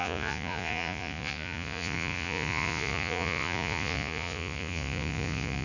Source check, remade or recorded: remade